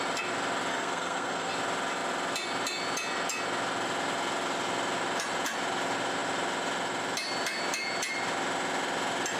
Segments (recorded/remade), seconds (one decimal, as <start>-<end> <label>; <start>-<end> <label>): 0.0-0.7 recorded; 0.7-1.5 remade; 1.5-9.4 recorded